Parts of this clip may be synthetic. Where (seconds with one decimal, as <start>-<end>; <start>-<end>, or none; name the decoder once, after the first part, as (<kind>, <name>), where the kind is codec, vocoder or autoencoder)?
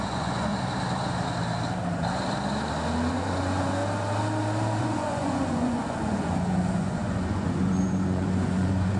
0.0-0.5 (vocoder, Vocos); 3.1-3.8; 4.8-9.0